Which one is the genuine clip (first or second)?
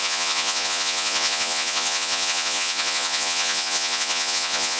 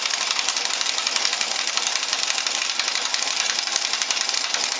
second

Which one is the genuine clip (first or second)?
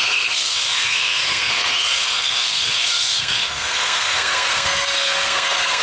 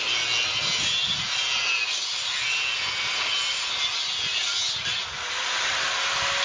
second